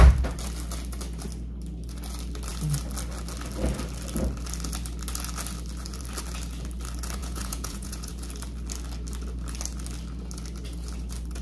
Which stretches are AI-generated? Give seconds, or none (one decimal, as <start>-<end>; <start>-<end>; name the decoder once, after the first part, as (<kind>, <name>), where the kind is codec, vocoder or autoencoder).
7.2-8.1 (vocoder, Vocos)